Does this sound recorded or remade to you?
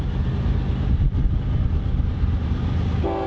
recorded